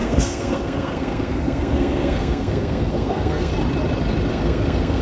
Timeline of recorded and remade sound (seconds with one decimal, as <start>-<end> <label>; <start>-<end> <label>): 0.0-3.5 remade; 3.5-4.3 recorded; 4.3-5.0 remade